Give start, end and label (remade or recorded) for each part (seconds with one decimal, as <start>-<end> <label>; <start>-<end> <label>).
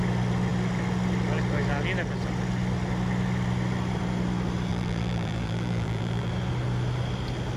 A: 0.0-4.7 recorded; 4.7-6.3 remade; 6.3-7.6 recorded